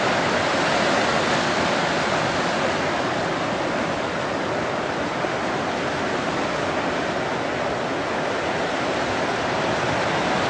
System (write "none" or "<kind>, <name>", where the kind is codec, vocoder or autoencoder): none